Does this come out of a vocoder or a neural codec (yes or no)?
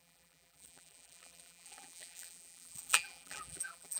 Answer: yes